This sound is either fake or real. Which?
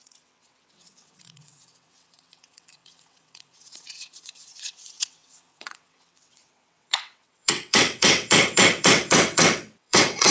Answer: fake